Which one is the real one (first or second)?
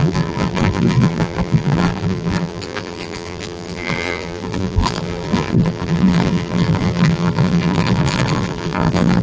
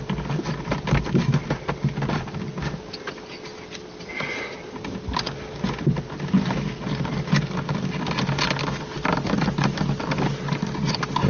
second